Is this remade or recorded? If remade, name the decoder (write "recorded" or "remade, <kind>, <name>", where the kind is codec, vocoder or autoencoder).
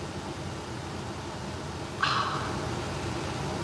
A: recorded